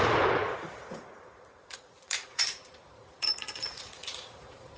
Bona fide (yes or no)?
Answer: no